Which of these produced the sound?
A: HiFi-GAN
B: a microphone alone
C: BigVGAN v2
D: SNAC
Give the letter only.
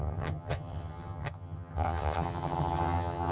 A